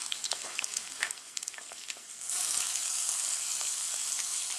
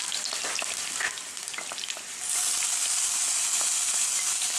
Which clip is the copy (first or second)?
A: first